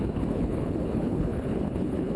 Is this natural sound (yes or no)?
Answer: no